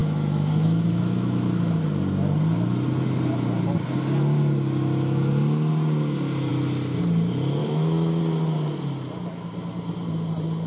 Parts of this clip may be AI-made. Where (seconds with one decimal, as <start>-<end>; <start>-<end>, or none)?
0.0-1.8; 7.6-8.2